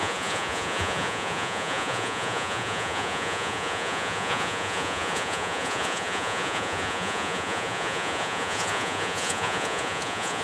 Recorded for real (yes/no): no